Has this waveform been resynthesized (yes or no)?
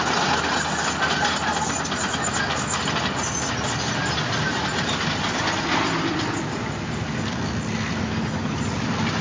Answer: no